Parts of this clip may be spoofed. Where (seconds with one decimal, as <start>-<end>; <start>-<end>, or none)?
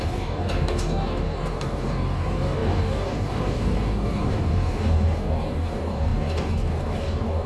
0.0-7.5